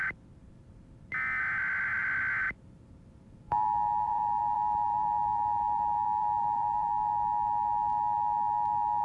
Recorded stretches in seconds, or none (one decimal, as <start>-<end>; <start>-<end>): 0.0-0.4; 1.4-1.9; 7.1-9.0